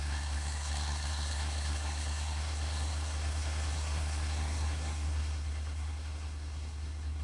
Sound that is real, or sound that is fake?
fake